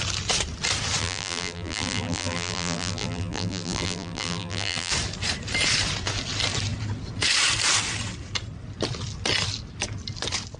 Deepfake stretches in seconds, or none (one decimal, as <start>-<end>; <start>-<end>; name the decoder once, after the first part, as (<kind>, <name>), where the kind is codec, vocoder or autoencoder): 1.0-4.9 (vocoder, BigVGAN v2)